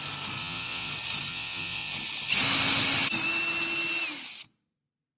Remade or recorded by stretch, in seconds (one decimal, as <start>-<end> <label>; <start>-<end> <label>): 0.0-0.4 recorded; 0.4-0.9 remade; 0.9-1.3 recorded; 1.3-1.9 remade; 1.9-5.2 recorded